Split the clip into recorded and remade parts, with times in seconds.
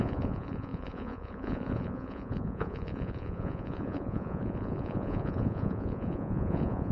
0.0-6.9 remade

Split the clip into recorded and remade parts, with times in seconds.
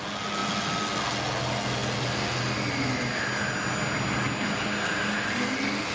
0.0-5.9 recorded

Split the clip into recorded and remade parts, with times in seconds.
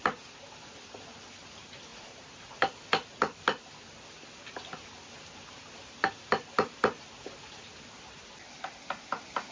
0.0-1.9 recorded; 1.9-2.6 remade; 2.6-9.5 recorded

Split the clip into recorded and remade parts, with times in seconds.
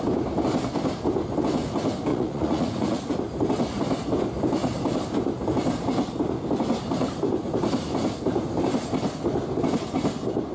0.0-2.1 recorded; 2.1-3.1 remade; 3.1-10.5 recorded